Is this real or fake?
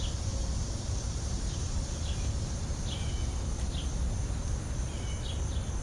real